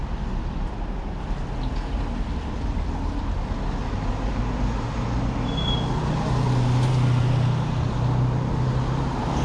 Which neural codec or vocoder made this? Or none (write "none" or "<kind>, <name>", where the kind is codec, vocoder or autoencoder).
none